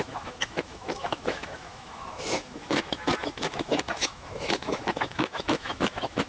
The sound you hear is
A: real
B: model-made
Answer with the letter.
B